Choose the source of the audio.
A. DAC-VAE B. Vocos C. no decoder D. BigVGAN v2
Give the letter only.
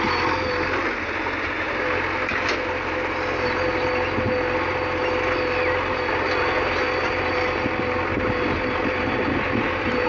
C